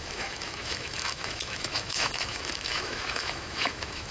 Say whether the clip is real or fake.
fake